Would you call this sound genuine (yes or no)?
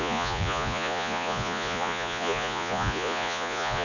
no